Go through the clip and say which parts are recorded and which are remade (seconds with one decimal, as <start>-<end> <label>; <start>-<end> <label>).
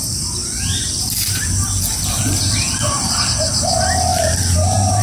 0.0-0.4 recorded; 0.4-3.3 remade; 3.3-4.1 recorded; 4.1-5.0 remade